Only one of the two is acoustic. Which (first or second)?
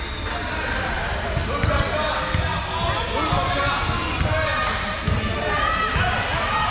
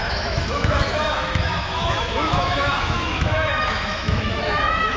first